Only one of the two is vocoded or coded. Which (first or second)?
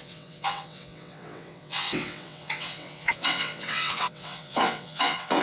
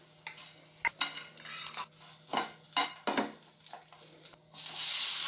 first